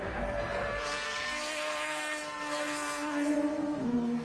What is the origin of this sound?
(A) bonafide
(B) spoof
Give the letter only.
B